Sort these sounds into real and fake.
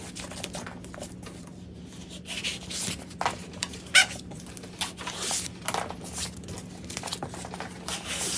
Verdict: real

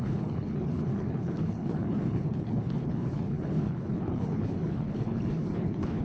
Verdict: fake